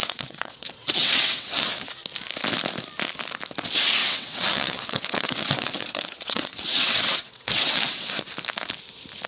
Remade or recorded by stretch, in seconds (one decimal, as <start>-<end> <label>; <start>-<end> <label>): 0.0-1.8 remade; 1.8-4.0 recorded; 4.0-8.2 remade; 8.2-9.3 recorded